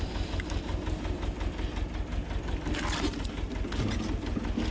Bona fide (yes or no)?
yes